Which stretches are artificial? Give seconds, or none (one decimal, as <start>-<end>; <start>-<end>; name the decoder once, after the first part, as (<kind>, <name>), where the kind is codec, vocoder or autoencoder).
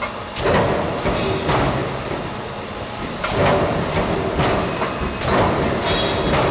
1.8-3.9 (vocoder, BigVGAN v2)